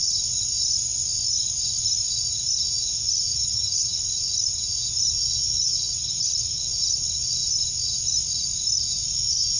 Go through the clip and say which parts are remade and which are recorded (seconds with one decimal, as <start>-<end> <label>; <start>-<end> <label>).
0.0-3.3 recorded; 3.3-4.0 remade; 4.0-6.0 recorded; 6.0-6.6 remade; 6.6-9.6 recorded